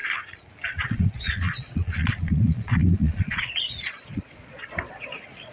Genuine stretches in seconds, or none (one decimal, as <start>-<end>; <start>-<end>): 0.0-0.7